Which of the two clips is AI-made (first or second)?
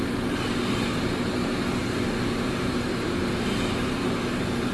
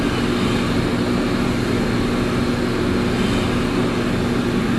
first